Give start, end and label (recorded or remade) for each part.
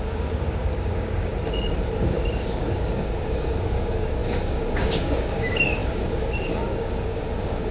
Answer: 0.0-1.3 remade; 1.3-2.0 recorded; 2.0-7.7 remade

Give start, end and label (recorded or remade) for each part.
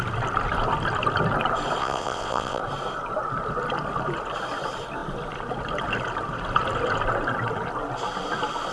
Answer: 0.0-1.8 recorded; 1.8-2.6 remade; 2.6-8.7 recorded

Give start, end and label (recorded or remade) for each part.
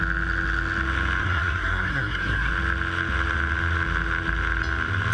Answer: 0.0-1.2 recorded; 1.2-2.5 remade; 2.5-5.1 recorded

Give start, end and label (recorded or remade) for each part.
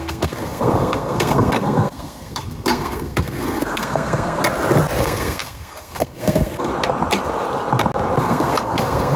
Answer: 0.0-4.4 remade; 4.4-5.0 recorded; 5.0-6.7 remade; 6.7-8.2 recorded; 8.2-9.2 remade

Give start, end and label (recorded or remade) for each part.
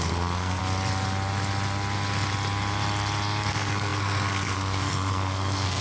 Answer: 0.0-0.6 remade; 0.6-3.5 recorded; 3.5-5.8 remade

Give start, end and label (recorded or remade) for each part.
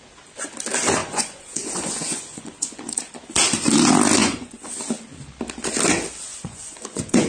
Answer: 0.0-1.0 recorded; 1.0-3.0 remade; 3.0-4.2 recorded; 4.2-4.7 remade; 4.7-6.3 recorded; 6.3-7.3 remade